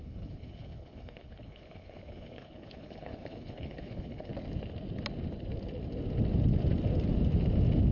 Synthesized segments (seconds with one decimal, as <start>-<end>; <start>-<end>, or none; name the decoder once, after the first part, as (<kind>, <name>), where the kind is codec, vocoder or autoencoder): 0.0-4.3 (codec, HILCodec)